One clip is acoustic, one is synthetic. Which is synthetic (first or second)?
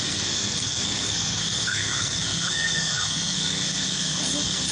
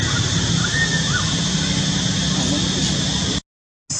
first